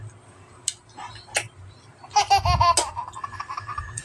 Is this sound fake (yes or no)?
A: no